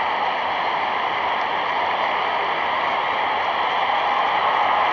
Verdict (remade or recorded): recorded